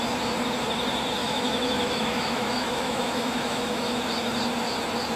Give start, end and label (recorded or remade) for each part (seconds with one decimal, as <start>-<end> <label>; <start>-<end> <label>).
0.0-1.2 recorded; 1.2-4.0 remade; 4.0-5.2 recorded

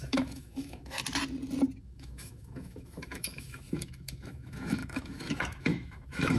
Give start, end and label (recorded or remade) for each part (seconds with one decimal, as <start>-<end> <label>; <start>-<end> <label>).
0.0-1.0 remade; 1.0-1.8 recorded; 1.8-6.4 remade

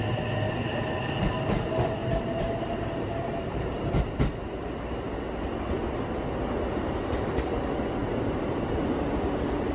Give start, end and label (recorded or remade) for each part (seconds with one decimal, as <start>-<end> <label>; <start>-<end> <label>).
0.0-2.0 recorded; 2.0-4.2 remade; 4.2-8.0 recorded; 8.0-8.9 remade; 8.9-9.7 recorded

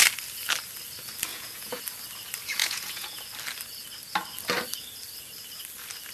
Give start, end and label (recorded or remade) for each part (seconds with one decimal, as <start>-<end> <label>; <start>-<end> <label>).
0.0-1.3 recorded; 1.3-1.8 remade; 1.8-2.6 recorded; 2.6-3.2 remade; 3.2-6.1 recorded

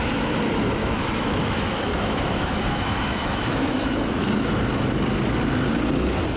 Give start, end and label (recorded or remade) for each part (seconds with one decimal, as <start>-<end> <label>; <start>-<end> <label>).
0.0-0.8 recorded; 0.8-4.5 remade; 4.5-6.4 recorded

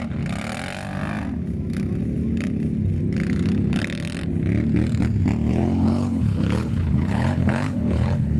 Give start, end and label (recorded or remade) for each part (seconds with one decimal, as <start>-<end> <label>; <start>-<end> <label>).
0.0-5.5 recorded; 5.5-8.4 remade